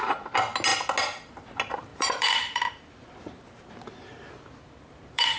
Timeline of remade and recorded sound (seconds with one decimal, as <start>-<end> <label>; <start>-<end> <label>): 0.0-1.9 recorded; 1.9-5.4 remade